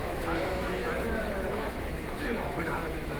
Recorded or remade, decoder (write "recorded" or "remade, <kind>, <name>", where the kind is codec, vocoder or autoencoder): remade, autoencoder, DAC-VAE